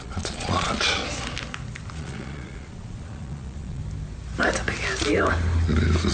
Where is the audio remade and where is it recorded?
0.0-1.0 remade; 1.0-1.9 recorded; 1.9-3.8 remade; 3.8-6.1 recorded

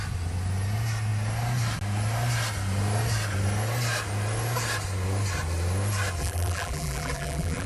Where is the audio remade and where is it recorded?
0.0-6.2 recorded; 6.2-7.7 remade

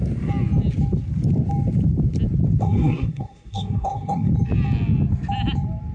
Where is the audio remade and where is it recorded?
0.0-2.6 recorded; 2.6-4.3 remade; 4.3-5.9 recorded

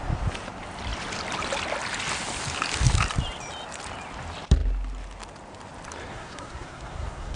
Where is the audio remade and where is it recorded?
0.0-6.1 recorded; 6.1-7.4 remade

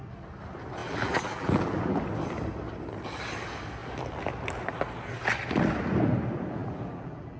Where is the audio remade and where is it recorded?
0.0-0.8 recorded; 0.8-2.0 remade; 2.0-6.6 recorded; 6.6-7.4 remade

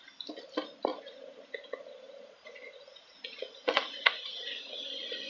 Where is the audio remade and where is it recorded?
0.0-0.9 recorded; 0.9-4.1 remade; 4.1-5.3 recorded

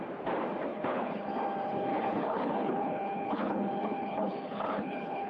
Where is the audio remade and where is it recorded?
0.0-0.7 recorded; 0.7-1.3 remade; 1.3-1.9 recorded; 1.9-5.3 remade

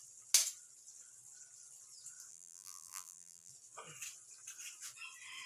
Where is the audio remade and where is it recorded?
0.0-2.3 recorded; 2.3-3.5 remade; 3.5-5.5 recorded